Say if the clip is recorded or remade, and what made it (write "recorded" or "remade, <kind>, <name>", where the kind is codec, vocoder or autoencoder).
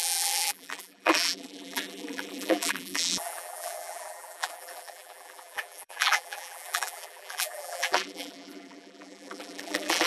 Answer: remade, vocoder, BigVGAN v2